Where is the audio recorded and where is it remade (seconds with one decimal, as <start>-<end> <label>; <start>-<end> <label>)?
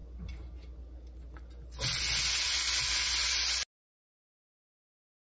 0.0-5.2 recorded